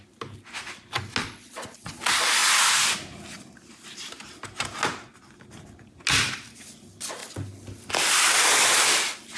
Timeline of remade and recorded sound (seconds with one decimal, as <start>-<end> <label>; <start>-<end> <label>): 0.0-1.2 recorded; 1.2-2.0 remade; 2.0-9.4 recorded